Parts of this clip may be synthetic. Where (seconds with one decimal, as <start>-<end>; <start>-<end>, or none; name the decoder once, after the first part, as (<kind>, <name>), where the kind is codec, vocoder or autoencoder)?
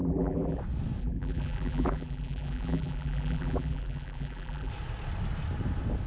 0.0-0.6 (vocoder, BigVGAN v2); 1.0-4.7